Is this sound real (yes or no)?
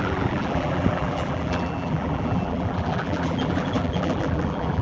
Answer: no